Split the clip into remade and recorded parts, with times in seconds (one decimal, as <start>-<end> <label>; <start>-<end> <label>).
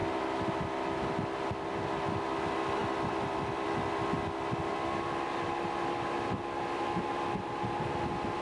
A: 0.0-8.4 recorded